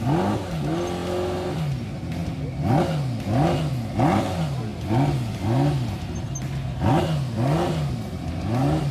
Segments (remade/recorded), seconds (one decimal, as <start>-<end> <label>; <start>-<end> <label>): 0.0-8.9 recorded